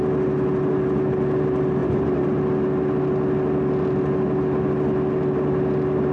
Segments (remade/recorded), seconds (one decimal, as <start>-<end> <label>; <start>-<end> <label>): 0.0-1.8 recorded; 1.8-2.4 remade; 2.4-6.1 recorded